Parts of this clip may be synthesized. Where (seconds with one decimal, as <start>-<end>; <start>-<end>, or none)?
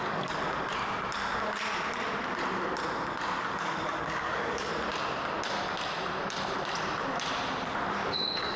0.0-0.4; 3.4-4.7; 8.1-8.6